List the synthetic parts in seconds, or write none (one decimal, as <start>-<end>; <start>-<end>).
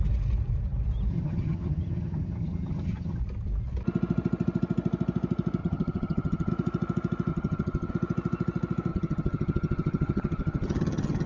1.1-3.2; 5.6-6.5; 7.3-7.9; 8.9-11.3